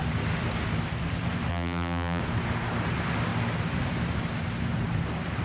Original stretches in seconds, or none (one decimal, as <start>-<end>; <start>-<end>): 0.0-1.5; 2.2-5.4